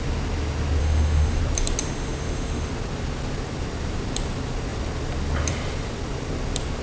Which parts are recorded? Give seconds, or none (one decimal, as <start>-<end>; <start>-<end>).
0.0-0.8; 1.4-1.8; 2.7-6.8